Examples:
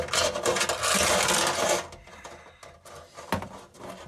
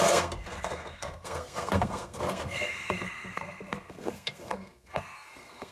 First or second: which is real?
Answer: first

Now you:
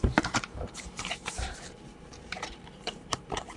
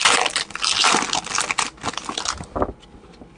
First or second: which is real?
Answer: second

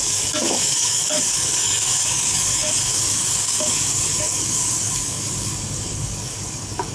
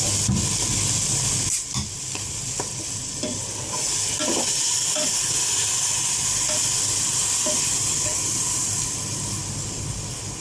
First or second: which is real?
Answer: second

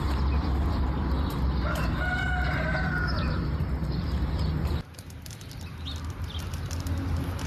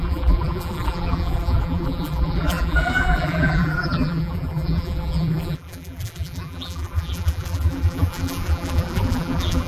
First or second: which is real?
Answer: first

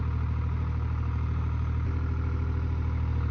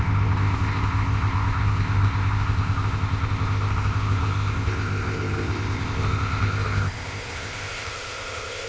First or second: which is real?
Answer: first